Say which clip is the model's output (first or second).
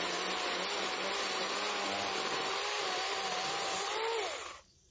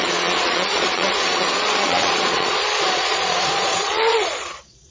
second